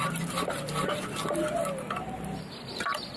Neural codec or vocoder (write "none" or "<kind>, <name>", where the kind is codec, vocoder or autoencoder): none